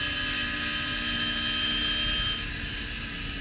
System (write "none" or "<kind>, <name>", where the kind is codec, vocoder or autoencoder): none